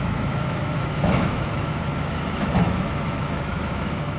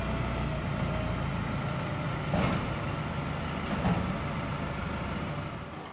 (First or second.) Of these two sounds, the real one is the second